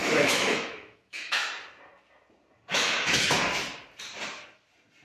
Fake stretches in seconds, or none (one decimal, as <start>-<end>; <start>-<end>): 0.0-1.5; 2.7-3.4